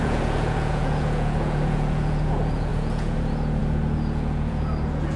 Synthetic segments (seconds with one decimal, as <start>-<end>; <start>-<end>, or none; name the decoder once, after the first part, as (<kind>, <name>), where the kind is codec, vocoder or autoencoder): 0.0-5.2 (vocoder, Vocos)